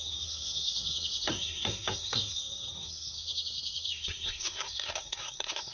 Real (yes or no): no